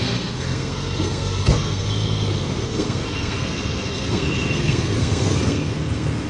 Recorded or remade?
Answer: remade